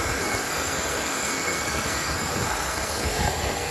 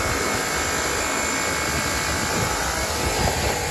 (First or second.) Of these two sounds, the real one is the second